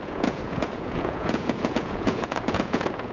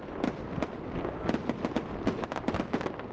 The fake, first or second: first